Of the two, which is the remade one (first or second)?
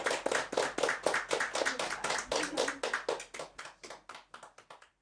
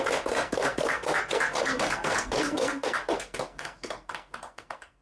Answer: second